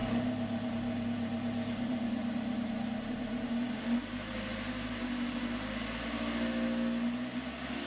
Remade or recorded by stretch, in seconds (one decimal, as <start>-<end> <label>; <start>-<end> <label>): 0.0-3.5 remade; 3.5-4.0 recorded; 4.0-4.9 remade; 4.9-7.9 recorded